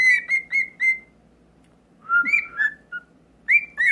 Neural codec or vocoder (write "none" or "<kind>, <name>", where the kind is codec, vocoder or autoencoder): none